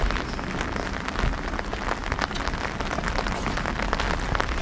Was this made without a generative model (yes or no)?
yes